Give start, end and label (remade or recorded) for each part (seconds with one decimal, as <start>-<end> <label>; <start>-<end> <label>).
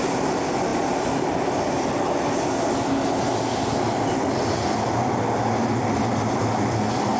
0.0-7.2 recorded